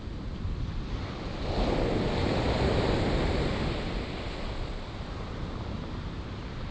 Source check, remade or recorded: recorded